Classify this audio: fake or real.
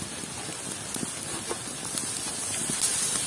real